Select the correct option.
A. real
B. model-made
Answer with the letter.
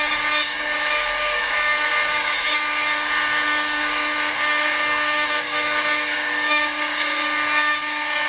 B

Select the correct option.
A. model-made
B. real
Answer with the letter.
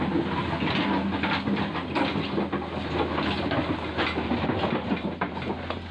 B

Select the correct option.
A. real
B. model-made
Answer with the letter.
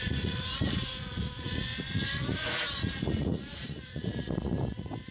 B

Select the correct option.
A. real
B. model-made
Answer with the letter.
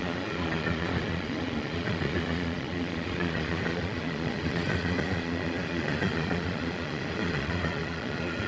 B